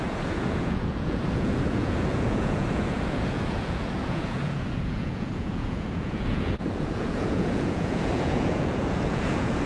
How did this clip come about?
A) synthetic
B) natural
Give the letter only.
A